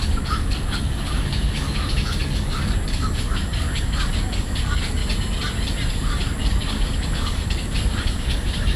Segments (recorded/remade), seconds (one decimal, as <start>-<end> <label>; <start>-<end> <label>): 0.0-5.0 remade; 5.0-5.9 recorded; 5.9-8.8 remade